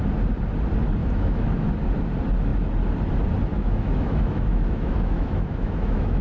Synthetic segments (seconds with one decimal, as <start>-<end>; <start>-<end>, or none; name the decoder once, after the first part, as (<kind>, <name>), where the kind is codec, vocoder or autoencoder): 1.0-1.7 (autoencoder, DAC-VAE); 3.5-6.2